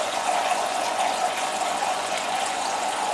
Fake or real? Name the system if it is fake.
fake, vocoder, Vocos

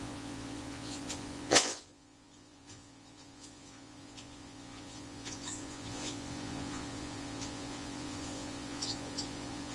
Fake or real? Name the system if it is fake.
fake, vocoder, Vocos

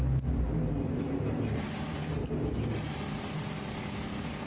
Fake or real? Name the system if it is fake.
real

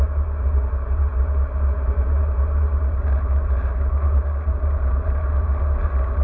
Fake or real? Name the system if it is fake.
real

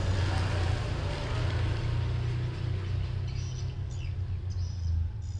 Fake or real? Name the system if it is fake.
real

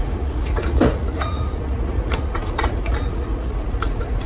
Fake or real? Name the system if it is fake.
fake, vocoder, Vocos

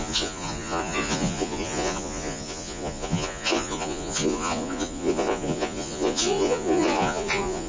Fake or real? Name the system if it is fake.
fake, vocoder, Vocos